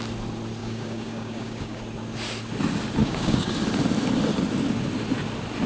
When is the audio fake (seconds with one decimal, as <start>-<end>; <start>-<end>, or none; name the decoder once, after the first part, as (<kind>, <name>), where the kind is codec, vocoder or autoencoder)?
0.6-1.8 (codec, DAC); 3.0-3.5